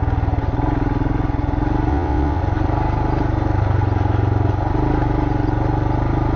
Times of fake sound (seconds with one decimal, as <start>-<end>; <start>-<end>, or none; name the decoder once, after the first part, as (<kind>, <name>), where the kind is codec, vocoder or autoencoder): 1.9-2.4 (vocoder, WaveNeXt)